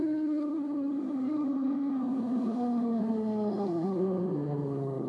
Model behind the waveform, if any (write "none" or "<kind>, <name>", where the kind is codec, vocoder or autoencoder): codec, SNAC